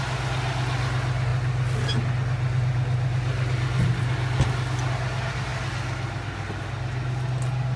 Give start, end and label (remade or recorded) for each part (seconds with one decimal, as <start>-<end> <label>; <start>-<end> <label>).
0.0-7.8 recorded